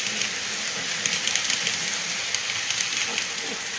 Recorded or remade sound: recorded